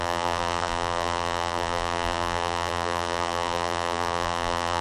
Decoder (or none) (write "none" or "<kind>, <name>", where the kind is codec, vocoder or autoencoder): vocoder, BigVGAN v2